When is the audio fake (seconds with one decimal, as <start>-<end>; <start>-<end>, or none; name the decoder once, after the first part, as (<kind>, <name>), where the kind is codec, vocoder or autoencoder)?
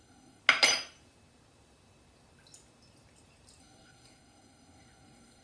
0.0-0.4 (codec, SNAC); 3.6-5.4